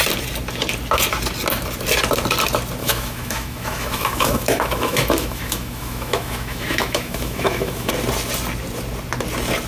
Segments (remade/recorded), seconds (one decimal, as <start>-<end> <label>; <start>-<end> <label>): 0.0-2.8 recorded; 2.8-7.9 remade; 7.9-9.7 recorded